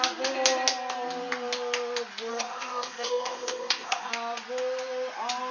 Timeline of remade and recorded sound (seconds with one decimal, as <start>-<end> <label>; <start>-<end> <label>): 0.0-2.3 recorded; 2.3-4.1 remade; 4.1-5.5 recorded